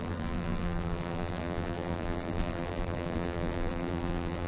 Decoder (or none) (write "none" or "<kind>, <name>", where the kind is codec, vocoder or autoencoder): vocoder, BigVGAN v2